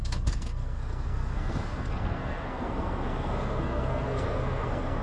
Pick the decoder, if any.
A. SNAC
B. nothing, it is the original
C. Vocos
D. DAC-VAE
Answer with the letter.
A